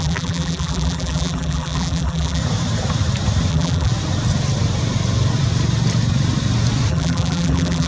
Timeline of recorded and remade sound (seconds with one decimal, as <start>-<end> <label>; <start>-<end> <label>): 0.0-2.4 remade; 2.4-3.5 recorded; 3.5-3.9 remade; 3.9-6.9 recorded; 6.9-7.9 remade